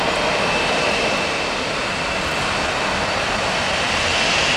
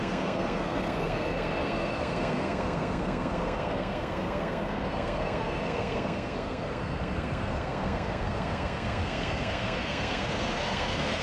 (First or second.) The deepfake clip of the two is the second